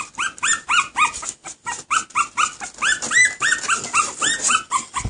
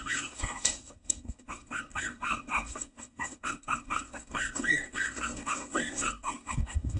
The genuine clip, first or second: first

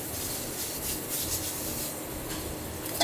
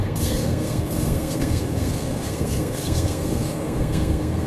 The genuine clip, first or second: first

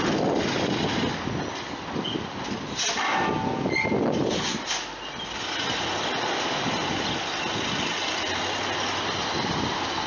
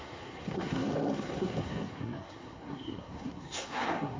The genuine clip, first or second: first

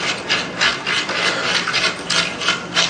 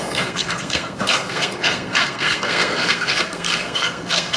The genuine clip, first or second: first